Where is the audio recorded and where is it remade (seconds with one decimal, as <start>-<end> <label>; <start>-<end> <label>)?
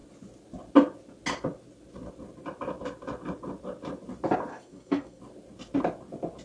0.0-4.5 recorded; 4.5-5.2 remade; 5.2-6.4 recorded